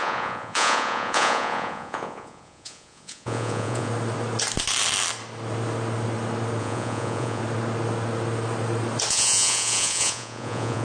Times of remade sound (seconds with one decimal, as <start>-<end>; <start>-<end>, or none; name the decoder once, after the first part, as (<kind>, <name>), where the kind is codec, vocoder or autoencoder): 0.0-3.9 (vocoder, Vocos); 6.6-7.4; 9.1-10.8

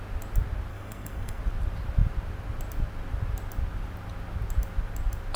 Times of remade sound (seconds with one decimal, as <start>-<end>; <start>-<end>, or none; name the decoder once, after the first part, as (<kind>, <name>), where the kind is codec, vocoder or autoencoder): 0.7-1.4 (codec, SNAC)

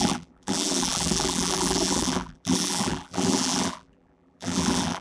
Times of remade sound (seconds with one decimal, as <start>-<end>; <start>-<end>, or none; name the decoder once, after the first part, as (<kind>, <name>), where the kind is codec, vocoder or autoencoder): 0.0-5.0 (vocoder, BigVGAN v2)

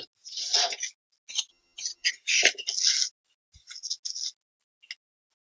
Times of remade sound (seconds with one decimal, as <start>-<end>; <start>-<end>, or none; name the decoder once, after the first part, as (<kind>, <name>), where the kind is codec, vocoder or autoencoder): 1.5-2.1 (vocoder, HiFi-GAN)

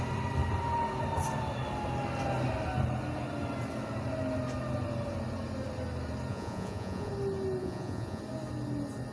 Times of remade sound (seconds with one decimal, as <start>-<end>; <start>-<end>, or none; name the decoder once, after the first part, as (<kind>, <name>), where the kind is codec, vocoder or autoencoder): 6.3-7.1 (vocoder, Vocos); 7.6-8.2

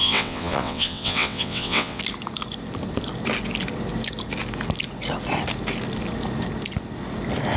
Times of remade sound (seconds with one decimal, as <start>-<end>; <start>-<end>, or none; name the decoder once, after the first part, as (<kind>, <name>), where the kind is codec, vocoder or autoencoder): 0.0-2.0 (vocoder, WaveNeXt)